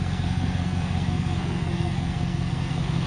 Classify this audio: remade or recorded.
remade